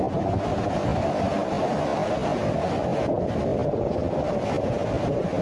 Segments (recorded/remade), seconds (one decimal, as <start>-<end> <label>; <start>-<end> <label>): 0.0-5.4 recorded